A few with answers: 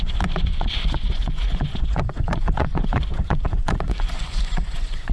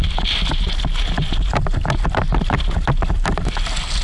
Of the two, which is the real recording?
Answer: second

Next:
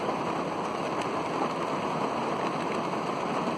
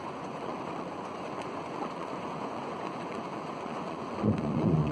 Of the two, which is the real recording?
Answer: first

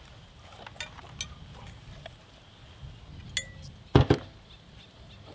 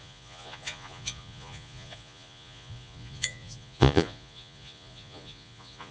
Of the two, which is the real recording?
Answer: first